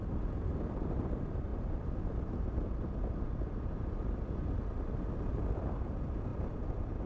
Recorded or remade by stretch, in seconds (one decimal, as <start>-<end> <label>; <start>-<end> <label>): 0.0-7.1 recorded